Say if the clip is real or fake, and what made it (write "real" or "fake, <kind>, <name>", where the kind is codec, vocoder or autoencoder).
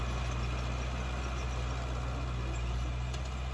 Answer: real